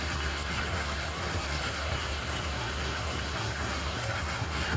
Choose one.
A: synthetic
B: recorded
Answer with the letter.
A